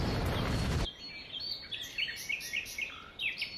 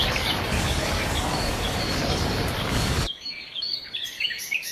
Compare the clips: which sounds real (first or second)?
first